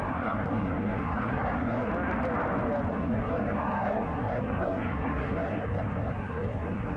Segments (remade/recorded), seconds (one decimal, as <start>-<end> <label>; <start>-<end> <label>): 0.0-1.9 remade; 1.9-2.9 recorded; 2.9-7.0 remade